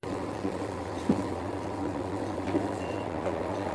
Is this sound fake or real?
fake